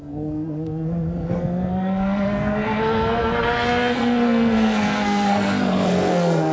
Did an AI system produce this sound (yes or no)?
yes